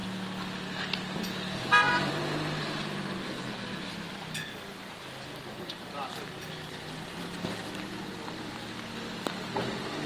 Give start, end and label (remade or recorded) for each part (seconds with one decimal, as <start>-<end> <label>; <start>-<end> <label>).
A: 0.0-3.2 recorded; 3.2-3.9 remade; 3.9-10.1 recorded